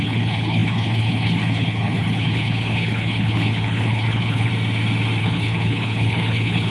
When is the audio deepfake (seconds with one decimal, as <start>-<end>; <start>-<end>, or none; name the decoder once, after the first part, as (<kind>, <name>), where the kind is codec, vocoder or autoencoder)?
0.0-4.5 (codec, HILCodec); 5.2-6.7